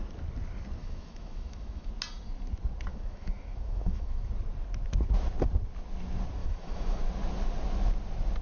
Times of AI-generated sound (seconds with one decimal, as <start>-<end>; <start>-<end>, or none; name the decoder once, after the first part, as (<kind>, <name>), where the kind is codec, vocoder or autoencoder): 0.8-1.9 (autoencoder, DAC-VAE); 2.9-4.3; 6.4-7.0